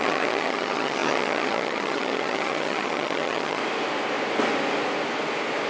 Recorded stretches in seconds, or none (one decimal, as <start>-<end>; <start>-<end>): 3.6-5.7